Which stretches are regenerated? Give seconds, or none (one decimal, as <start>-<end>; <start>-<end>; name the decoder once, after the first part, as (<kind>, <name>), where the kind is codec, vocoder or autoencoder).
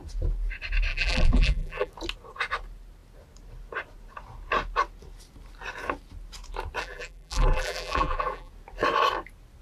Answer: 0.9-1.9 (vocoder, BigVGAN v2); 6.8-8.5